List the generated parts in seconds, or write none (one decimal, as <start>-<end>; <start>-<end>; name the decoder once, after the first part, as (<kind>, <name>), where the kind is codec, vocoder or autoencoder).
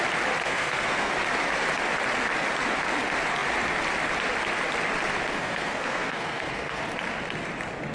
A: 0.4-1.1 (codec, SNAC); 5.3-6.8